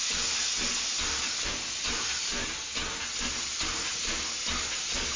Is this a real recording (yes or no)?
yes